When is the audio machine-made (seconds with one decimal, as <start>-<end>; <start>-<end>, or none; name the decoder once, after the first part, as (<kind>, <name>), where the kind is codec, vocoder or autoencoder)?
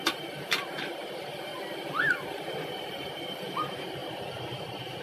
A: 0.0-1.5 (vocoder, BigVGAN v2); 2.9-5.0